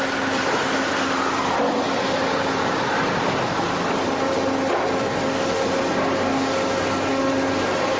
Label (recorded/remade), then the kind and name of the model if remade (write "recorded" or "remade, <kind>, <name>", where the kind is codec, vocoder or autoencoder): recorded